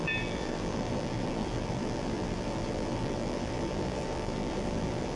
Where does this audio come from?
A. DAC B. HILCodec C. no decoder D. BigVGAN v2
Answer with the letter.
D